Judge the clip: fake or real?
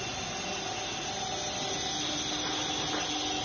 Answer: real